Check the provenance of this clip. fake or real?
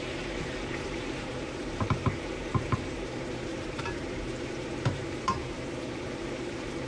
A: fake